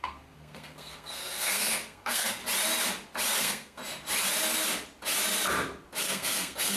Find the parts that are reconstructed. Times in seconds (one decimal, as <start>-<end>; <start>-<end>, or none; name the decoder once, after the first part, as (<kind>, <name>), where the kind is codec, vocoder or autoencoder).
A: 0.0-2.4 (codec, SNAC); 3.4-3.8; 6.0-6.8